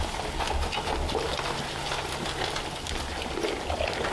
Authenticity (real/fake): real